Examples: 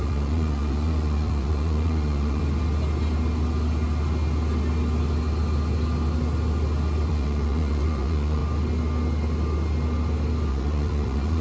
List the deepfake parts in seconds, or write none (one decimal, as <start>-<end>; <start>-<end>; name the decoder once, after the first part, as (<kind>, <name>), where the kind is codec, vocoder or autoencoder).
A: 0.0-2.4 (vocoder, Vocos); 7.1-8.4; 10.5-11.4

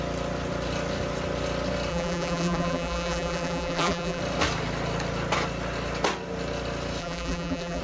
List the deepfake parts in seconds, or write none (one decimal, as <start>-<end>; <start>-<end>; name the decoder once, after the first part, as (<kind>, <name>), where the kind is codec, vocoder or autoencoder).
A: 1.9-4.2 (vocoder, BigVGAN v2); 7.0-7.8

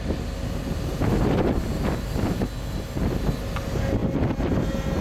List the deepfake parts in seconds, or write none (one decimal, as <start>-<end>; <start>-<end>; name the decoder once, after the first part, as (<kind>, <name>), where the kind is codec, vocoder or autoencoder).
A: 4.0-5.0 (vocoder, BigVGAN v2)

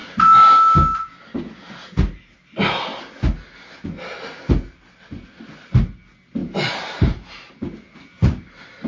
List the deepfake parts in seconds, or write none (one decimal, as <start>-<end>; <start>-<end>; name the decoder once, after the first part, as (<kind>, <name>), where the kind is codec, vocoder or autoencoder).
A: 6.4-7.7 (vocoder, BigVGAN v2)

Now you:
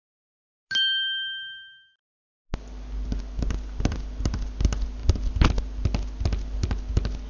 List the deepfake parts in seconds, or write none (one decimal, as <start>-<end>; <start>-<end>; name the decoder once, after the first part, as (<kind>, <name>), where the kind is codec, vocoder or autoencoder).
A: none